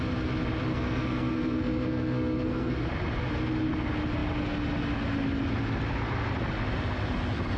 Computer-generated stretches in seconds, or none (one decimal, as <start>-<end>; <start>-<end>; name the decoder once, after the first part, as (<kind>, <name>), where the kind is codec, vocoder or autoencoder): 0.7-2.7 (codec, SNAC)